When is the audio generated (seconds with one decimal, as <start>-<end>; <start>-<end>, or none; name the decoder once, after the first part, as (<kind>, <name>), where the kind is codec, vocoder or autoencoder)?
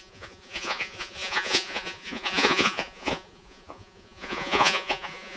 0.0-5.4 (vocoder, Vocos)